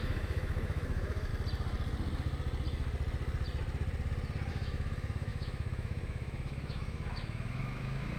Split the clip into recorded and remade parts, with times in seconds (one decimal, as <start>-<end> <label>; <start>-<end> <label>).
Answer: 0.0-1.3 remade; 1.3-4.5 recorded; 4.5-8.2 remade